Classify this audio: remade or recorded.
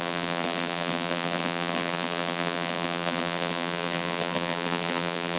remade